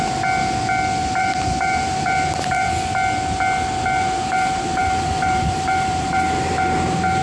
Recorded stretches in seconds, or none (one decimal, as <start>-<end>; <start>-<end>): 0.0-1.0; 2.7-4.0